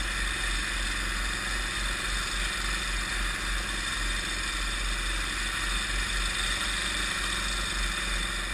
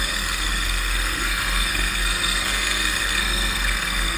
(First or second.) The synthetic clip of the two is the second